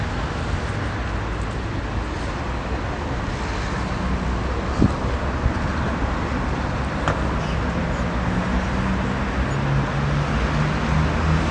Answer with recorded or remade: recorded